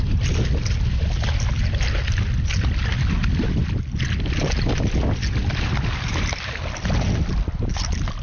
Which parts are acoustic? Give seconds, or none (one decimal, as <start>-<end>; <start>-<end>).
0.0-8.2